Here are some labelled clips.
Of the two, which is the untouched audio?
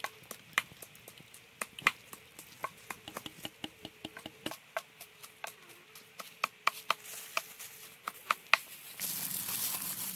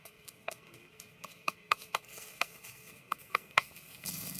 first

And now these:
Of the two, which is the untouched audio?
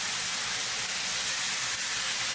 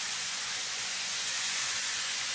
first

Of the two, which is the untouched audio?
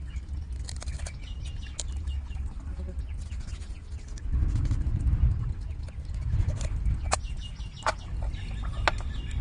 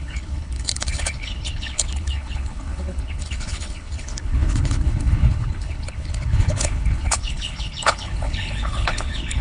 first